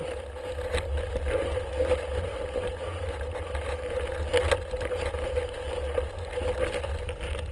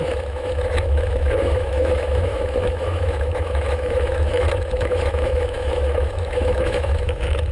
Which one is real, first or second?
first